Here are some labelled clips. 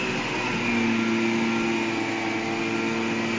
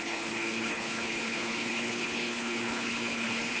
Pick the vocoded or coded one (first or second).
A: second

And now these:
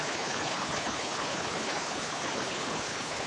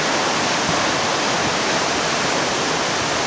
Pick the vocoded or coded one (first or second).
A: first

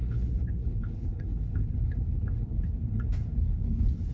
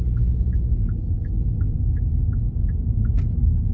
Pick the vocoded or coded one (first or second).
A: first